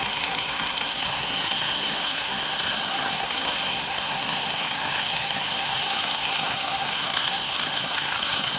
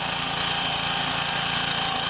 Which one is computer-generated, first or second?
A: first